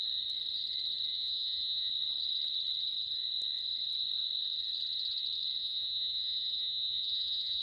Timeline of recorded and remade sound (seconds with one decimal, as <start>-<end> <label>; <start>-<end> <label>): 0.0-1.1 recorded; 1.1-1.9 remade; 1.9-5.6 recorded; 5.6-7.6 remade